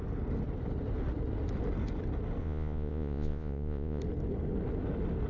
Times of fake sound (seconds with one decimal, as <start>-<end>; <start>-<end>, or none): 2.4-4.0